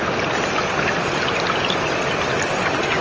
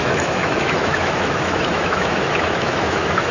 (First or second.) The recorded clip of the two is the first